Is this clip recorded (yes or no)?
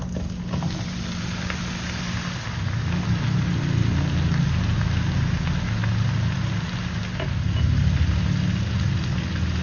yes